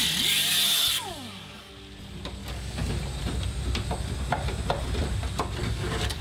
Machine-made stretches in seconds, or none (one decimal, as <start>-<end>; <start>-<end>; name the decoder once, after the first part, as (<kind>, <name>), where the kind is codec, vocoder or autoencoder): 1.0-1.7 (codec, DAC); 2.4-2.9; 5.6-6.2